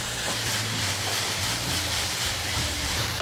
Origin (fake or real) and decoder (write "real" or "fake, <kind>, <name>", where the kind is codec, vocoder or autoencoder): fake, vocoder, BigVGAN v2